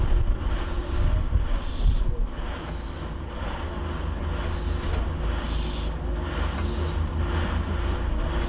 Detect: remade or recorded recorded